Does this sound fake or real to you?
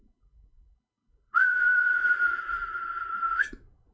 fake